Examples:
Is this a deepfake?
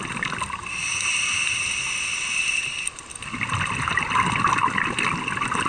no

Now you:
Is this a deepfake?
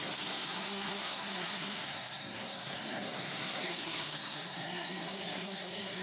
yes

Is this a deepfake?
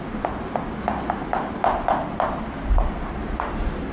no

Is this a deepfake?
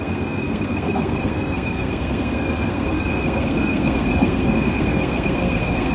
yes